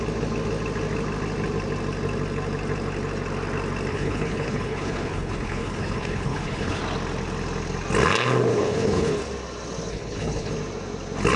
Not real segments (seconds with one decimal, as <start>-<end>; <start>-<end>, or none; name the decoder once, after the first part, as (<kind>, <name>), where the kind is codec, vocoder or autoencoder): 3.9-6.8 (codec, HILCodec); 8.5-9.2; 9.9-10.5